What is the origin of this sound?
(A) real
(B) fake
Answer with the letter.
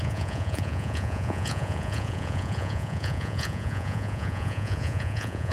B